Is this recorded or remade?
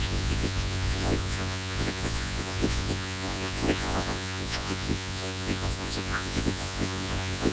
remade